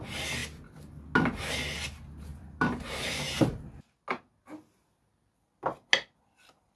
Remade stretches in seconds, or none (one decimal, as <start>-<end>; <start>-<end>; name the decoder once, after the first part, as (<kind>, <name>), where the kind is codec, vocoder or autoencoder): 2.3-3.6 (vocoder, BigVGAN v2)